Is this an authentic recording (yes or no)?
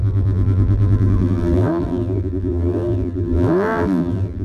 no